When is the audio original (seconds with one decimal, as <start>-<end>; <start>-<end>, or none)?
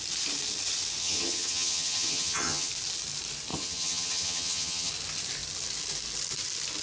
0.0-1.0; 2.7-3.5; 4.9-6.8